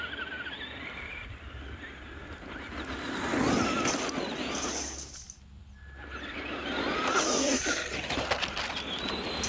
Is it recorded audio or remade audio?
recorded